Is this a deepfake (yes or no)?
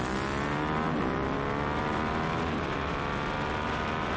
no